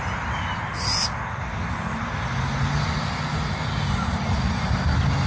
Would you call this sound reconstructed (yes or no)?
no